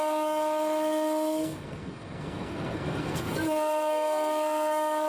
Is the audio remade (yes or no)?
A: yes